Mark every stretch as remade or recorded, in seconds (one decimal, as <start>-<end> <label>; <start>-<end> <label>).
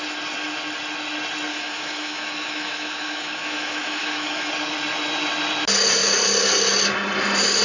0.0-1.5 recorded; 1.5-4.5 remade; 4.5-7.6 recorded